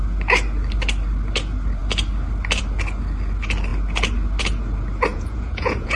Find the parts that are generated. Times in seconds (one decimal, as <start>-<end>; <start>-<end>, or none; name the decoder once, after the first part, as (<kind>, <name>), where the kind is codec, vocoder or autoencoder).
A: 5.1-6.0 (vocoder, Vocos)